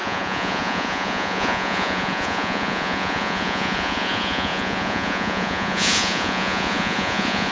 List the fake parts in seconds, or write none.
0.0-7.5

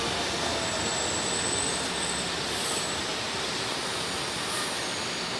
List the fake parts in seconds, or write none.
3.1-4.1

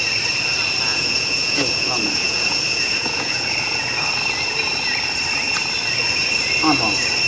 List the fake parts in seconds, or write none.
0.9-3.5

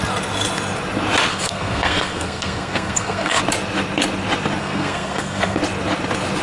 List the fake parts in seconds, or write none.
1.3-3.4; 4.6-5.6